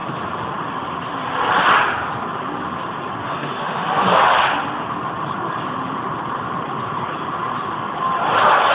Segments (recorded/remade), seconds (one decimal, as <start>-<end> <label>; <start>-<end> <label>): 0.0-3.2 recorded; 3.2-4.2 remade; 4.2-8.7 recorded